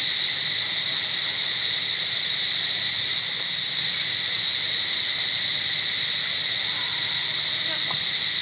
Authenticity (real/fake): real